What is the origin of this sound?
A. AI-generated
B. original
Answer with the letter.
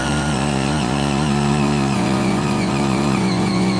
A